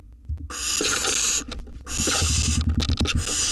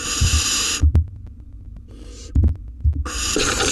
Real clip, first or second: first